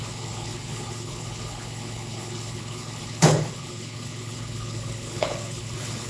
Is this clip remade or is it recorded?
remade